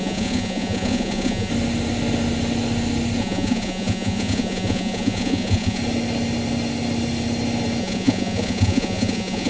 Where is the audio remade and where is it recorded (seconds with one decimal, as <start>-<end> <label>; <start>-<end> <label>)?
0.0-1.5 remade; 1.5-3.2 recorded; 3.2-5.8 remade; 5.8-7.8 recorded; 7.8-9.5 remade